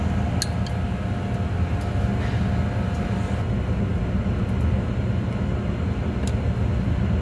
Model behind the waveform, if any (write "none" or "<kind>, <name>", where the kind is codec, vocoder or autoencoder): none